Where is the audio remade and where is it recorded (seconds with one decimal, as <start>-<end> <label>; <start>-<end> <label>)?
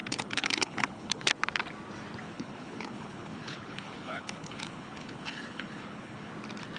0.0-1.3 remade; 1.3-2.2 recorded; 2.2-6.3 remade; 6.3-6.8 recorded